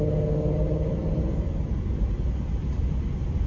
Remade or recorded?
recorded